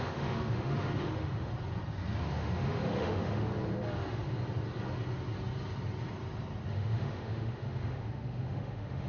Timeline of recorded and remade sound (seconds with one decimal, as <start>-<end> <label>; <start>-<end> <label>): 0.0-1.5 remade; 1.5-2.2 recorded; 2.2-3.5 remade; 3.5-6.7 recorded; 6.7-9.1 remade